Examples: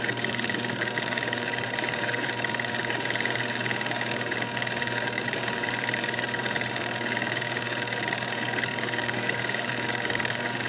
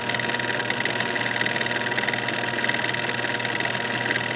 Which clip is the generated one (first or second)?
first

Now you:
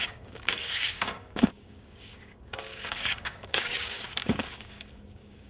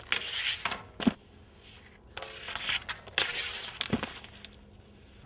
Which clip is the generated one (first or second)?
first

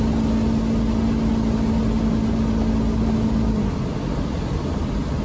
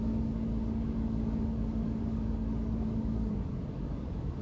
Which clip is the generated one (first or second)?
second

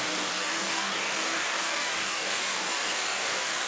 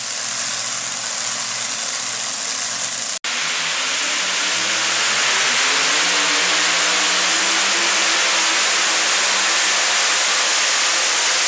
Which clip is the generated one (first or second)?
first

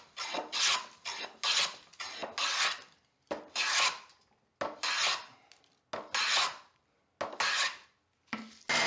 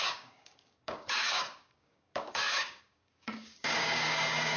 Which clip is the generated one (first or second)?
second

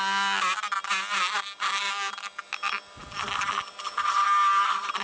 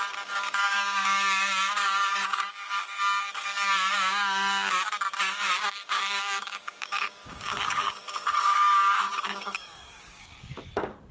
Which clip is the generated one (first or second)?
second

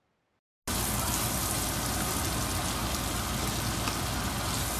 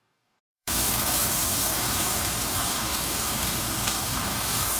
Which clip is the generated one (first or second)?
second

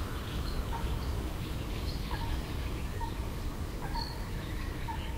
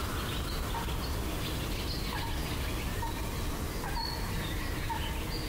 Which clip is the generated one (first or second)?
first